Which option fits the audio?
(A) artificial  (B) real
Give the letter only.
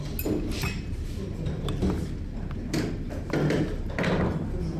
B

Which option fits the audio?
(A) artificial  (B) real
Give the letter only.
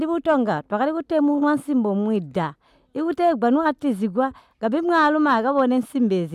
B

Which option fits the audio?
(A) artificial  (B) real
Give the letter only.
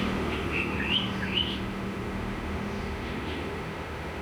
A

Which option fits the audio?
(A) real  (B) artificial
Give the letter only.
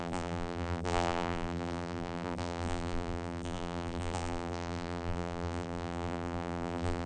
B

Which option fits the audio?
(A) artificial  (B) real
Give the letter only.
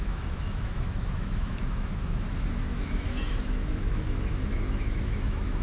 A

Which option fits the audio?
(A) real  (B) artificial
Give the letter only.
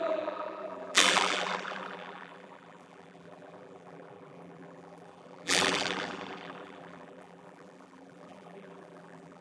B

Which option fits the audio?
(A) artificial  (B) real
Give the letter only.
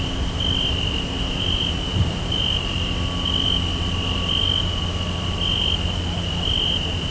B